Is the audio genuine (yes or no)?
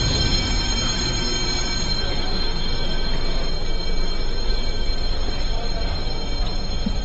yes